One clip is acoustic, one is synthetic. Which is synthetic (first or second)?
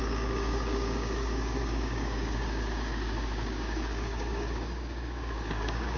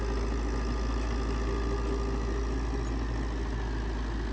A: first